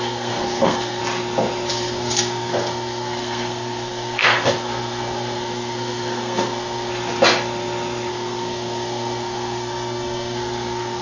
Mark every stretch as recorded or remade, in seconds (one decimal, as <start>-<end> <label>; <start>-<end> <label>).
0.0-1.0 remade; 1.0-1.7 recorded; 1.7-6.9 remade; 6.9-8.1 recorded; 8.1-11.0 remade